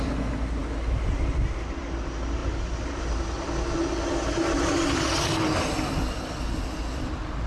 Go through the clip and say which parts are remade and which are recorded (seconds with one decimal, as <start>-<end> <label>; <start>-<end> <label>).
0.0-7.5 recorded